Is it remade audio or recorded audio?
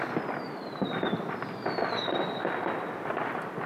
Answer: recorded